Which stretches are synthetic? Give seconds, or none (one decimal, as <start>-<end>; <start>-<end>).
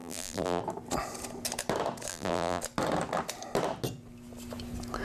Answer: 0.0-0.6; 2.1-2.6